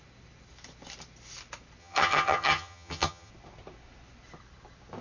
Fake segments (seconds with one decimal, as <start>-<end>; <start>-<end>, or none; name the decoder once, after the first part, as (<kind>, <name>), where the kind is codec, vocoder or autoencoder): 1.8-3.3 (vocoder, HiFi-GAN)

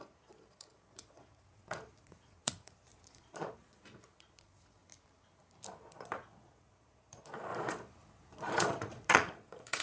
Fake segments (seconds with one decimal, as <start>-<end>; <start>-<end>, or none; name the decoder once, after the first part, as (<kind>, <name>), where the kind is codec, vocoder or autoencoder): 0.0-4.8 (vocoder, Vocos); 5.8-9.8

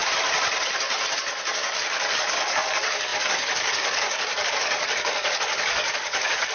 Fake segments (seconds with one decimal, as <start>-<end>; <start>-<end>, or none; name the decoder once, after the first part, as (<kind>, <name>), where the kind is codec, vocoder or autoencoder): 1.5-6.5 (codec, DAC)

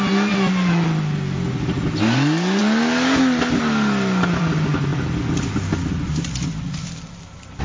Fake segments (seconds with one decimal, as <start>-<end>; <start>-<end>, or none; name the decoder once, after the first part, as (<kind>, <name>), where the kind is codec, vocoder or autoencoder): none